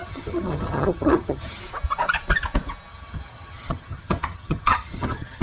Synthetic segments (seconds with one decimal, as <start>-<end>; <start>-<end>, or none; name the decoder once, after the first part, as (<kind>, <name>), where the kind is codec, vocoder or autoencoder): 0.0-1.6 (vocoder, HiFi-GAN); 2.9-5.4